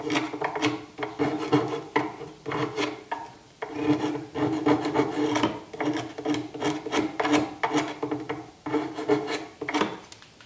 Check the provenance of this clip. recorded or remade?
recorded